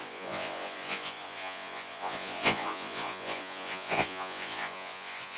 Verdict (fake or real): fake